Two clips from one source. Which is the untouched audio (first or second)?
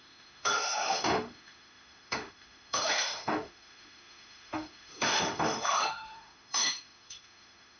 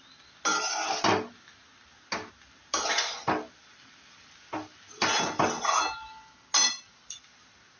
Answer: second